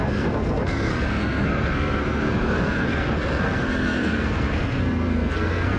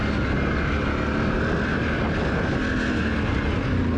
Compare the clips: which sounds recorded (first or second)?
second